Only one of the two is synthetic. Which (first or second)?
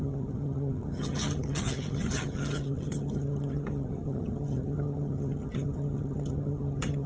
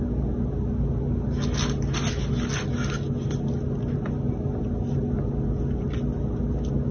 first